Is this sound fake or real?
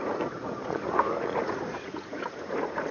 fake